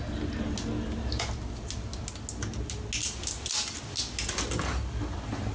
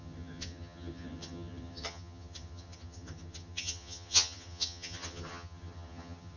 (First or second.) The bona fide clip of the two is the first